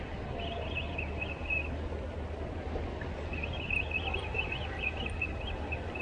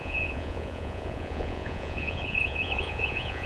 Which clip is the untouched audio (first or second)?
first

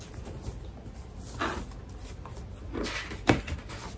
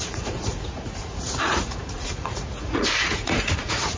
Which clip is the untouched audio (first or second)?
first